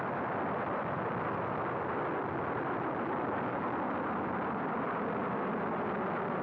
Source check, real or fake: real